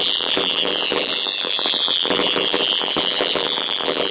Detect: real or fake fake